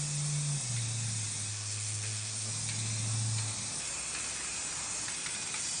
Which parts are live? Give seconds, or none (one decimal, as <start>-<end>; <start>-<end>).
0.0-1.5; 2.5-5.8